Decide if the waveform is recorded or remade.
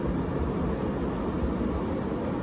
recorded